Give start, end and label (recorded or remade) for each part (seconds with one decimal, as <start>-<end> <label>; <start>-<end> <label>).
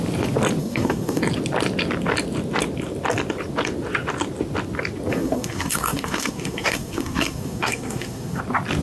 0.0-0.6 recorded; 0.6-1.2 remade; 1.2-5.1 recorded; 5.1-8.4 remade; 8.4-8.8 recorded